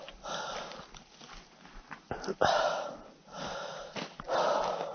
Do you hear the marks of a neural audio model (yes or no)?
no